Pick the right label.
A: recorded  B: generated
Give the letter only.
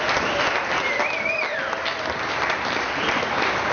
A